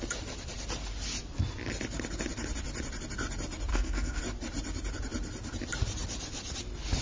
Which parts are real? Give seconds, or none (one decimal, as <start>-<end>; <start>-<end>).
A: 0.0-3.7; 4.2-7.0